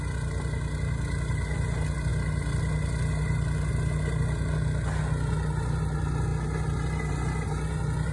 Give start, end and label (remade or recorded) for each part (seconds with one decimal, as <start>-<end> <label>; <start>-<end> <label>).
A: 0.0-8.1 recorded